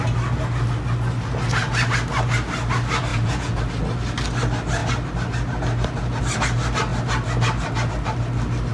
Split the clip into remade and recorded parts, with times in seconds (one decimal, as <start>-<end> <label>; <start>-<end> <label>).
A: 0.0-3.1 recorded; 3.1-3.6 remade; 3.6-8.7 recorded

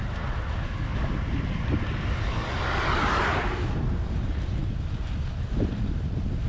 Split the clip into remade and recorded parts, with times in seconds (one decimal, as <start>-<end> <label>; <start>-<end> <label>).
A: 0.0-6.5 recorded